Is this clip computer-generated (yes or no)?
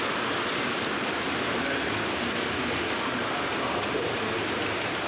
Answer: no